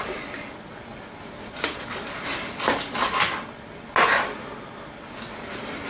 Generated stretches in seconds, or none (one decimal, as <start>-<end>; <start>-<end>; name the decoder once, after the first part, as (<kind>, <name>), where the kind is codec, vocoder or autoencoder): none